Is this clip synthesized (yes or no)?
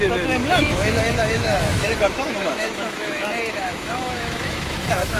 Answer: yes